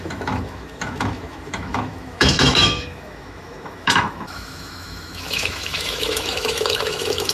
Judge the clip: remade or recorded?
remade